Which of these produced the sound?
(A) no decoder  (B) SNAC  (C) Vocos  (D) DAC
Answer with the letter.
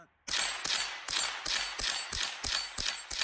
A